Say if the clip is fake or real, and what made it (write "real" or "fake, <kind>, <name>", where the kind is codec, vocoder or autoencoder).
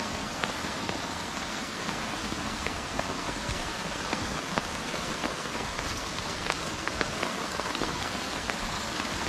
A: fake, codec, SNAC